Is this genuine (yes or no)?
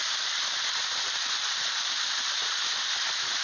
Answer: yes